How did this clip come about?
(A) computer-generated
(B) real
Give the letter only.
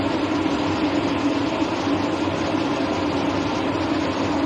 B